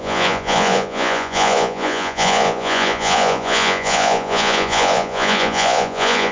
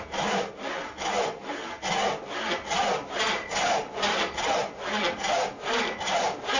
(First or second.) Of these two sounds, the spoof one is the first